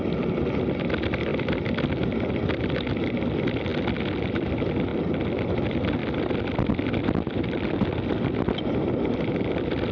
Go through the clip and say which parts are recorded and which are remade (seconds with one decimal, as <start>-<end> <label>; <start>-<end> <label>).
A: 0.0-9.9 recorded